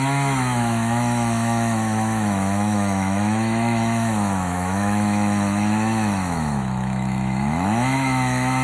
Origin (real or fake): fake